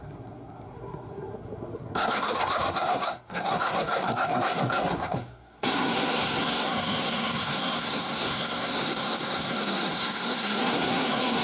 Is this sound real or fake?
fake